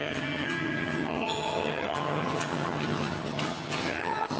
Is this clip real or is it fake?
fake